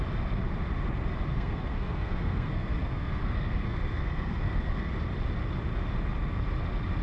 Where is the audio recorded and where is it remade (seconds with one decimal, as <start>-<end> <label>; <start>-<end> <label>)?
0.0-1.3 recorded; 1.3-4.9 remade; 4.9-7.0 recorded

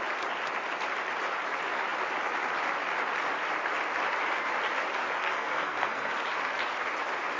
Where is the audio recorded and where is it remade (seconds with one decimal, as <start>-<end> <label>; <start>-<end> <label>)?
0.0-5.2 recorded; 5.2-6.1 remade; 6.1-7.4 recorded

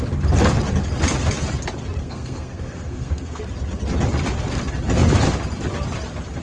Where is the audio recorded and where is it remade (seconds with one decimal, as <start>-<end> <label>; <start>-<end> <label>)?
0.0-2.0 recorded; 2.0-3.4 remade; 3.4-6.4 recorded

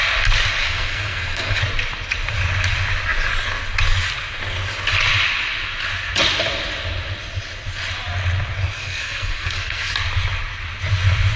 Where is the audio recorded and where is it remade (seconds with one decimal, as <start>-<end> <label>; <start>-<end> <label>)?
0.0-0.6 recorded; 0.6-1.6 remade; 1.6-8.6 recorded; 8.6-9.9 remade; 9.9-11.4 recorded

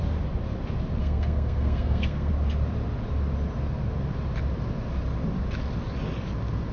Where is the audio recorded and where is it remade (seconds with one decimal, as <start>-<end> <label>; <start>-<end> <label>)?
0.0-1.0 recorded; 1.0-2.3 remade; 2.3-6.7 recorded

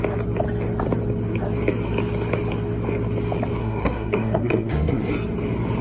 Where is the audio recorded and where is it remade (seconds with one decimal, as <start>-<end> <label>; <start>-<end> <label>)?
0.0-3.6 recorded; 3.6-5.1 remade; 5.1-5.8 recorded